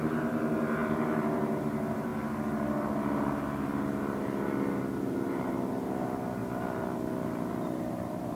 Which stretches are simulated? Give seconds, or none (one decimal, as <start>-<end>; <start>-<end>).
0.0-2.1; 4.7-6.4; 7.9-8.4